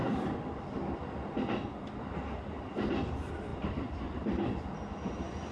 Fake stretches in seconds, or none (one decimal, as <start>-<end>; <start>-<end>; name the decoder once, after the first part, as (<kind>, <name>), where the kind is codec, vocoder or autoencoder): none